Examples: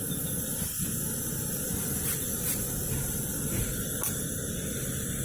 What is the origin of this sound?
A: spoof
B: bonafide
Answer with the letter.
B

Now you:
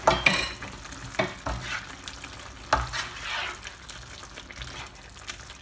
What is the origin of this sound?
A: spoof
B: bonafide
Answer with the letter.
B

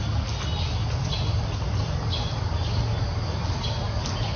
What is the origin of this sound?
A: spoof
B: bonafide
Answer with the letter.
B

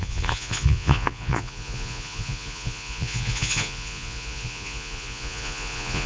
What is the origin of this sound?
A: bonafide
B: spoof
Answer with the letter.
B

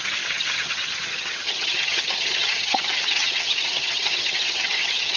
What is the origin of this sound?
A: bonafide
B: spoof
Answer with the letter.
B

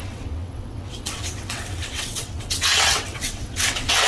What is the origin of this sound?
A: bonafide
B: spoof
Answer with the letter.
B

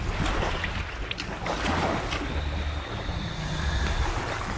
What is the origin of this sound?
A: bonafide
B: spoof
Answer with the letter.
A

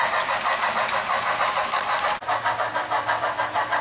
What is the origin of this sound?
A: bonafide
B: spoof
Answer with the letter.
A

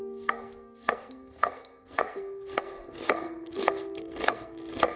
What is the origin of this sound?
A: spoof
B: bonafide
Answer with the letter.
A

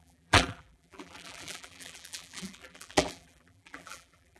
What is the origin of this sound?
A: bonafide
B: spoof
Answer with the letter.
B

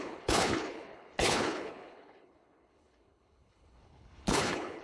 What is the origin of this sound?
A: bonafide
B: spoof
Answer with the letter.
B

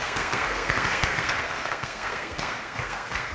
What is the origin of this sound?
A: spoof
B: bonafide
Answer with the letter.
A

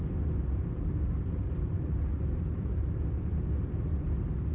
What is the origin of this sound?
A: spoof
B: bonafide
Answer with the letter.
A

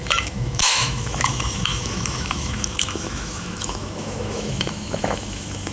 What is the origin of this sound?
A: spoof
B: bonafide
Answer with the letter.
A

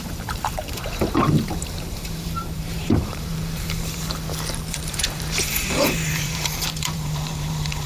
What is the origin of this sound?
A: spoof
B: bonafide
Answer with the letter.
A